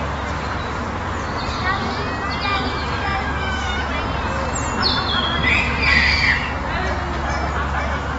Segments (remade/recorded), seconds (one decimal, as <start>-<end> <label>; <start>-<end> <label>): 0.0-2.5 recorded; 2.5-3.7 remade; 3.7-8.2 recorded